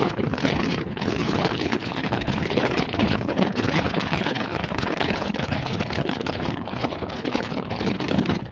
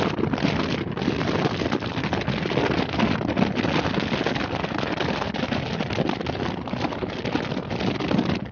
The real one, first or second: second